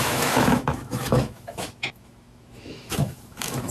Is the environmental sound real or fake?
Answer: fake